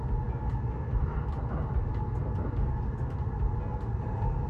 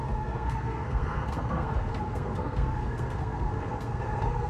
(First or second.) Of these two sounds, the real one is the first